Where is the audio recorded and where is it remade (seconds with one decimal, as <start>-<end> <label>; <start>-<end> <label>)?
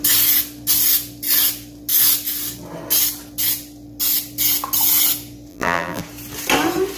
0.0-5.5 recorded; 5.5-6.0 remade; 6.0-7.0 recorded